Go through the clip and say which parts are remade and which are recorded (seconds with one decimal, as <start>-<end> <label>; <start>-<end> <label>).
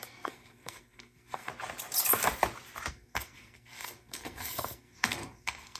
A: 0.0-1.5 remade; 1.5-2.9 recorded; 2.9-5.8 remade